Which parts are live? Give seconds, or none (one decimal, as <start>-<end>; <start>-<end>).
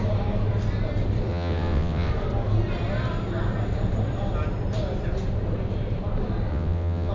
0.0-1.3; 2.1-6.5